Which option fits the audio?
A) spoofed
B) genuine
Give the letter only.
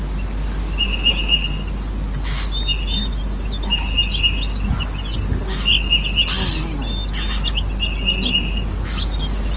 B